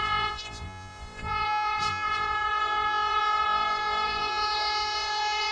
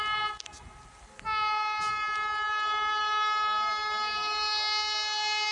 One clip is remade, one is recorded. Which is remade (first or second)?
first